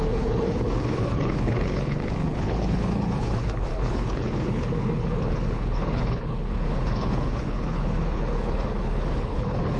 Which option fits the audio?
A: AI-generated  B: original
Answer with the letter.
A